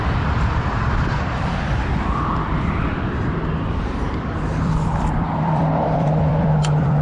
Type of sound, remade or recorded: remade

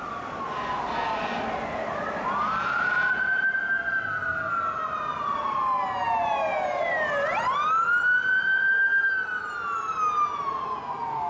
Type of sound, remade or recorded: recorded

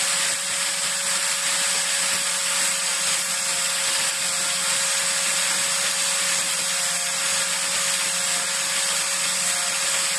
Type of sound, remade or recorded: recorded